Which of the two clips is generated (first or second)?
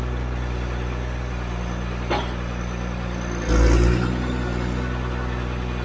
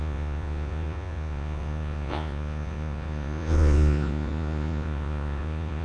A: second